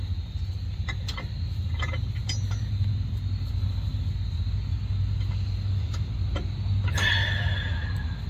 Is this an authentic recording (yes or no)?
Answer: yes